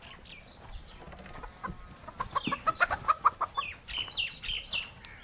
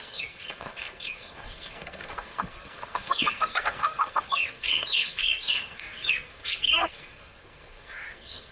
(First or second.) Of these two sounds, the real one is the first